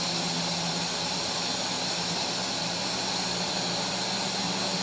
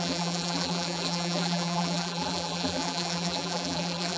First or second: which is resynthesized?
second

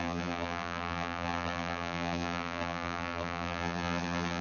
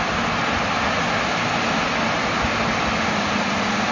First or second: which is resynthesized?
first